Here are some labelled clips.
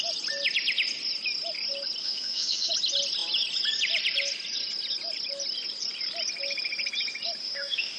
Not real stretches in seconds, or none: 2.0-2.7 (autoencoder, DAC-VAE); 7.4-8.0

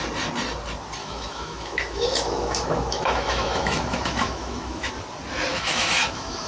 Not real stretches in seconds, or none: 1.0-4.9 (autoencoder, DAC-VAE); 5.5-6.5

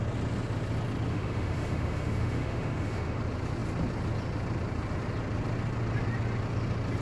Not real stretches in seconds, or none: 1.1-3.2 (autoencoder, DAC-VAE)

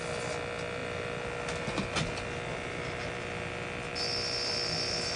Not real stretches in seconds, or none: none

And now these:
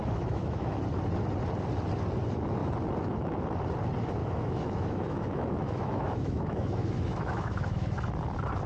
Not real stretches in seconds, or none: 0.0-0.8 (autoencoder, DAC-VAE); 4.2-8.0

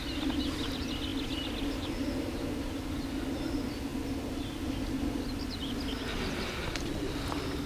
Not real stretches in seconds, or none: none